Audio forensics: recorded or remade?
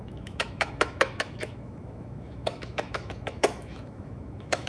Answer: remade